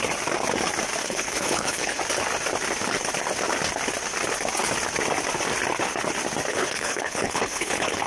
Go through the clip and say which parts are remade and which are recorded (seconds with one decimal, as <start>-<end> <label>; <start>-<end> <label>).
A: 0.0-1.0 recorded; 1.0-2.0 remade; 2.0-6.5 recorded; 6.5-8.1 remade